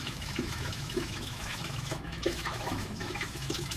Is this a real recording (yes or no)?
no